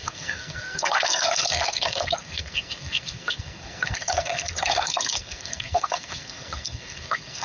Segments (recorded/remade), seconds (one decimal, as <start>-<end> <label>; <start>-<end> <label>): 0.0-7.4 remade